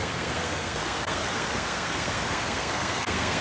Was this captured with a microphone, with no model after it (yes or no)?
no